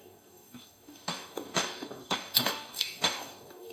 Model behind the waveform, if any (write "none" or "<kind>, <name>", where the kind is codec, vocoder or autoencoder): codec, DAC